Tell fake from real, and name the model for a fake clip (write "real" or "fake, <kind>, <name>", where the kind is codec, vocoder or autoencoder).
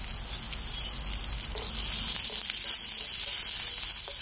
real